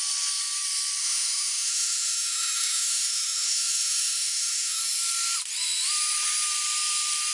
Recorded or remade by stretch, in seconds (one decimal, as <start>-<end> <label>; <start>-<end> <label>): 0.0-1.0 recorded; 1.0-4.8 remade; 4.8-7.3 recorded